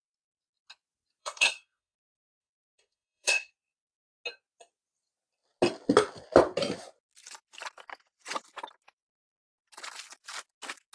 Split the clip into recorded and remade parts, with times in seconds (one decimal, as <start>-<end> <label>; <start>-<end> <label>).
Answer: 0.0-1.2 recorded; 1.2-3.5 remade; 3.5-10.9 recorded